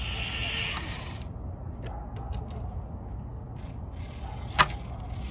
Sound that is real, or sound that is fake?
real